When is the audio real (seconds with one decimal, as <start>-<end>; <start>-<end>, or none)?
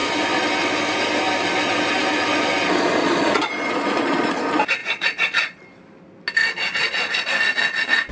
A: 0.0-3.0; 4.3-4.8; 5.6-6.4; 7.4-8.1